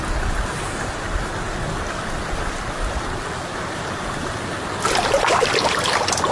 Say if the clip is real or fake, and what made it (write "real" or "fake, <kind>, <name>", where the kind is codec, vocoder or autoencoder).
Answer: real